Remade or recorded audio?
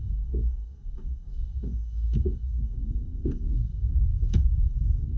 remade